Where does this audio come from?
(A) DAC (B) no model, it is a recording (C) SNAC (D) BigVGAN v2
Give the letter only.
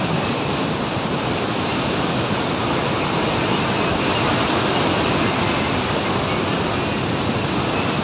B